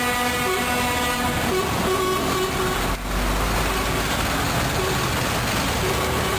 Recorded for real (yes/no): yes